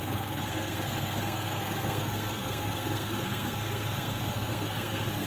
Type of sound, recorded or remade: remade